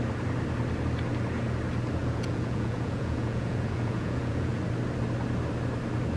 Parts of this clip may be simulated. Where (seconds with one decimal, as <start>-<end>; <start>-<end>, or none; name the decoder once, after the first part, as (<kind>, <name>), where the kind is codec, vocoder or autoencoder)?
2.0-4.6 (vocoder, Vocos)